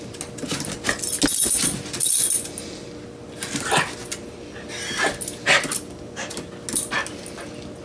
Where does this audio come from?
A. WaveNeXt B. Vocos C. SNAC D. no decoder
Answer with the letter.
D